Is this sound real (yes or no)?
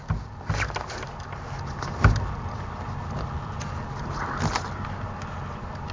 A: yes